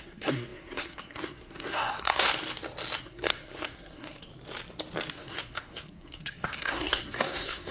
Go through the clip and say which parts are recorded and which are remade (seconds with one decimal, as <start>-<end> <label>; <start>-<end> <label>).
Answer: 0.0-2.3 remade; 2.3-3.0 recorded; 3.0-4.3 remade; 4.3-5.1 recorded; 5.1-7.7 remade